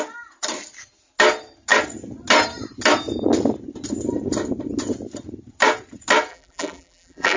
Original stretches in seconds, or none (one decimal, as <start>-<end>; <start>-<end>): 0.0-6.3

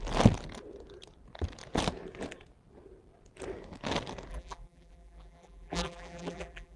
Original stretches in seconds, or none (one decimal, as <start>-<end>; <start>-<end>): 0.0-4.3

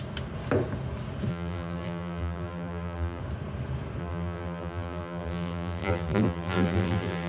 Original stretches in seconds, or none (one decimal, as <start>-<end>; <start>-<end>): 0.0-1.3; 3.2-4.0